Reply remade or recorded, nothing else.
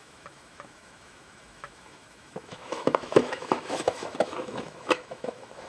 remade